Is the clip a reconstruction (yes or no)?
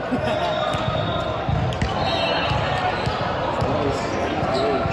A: no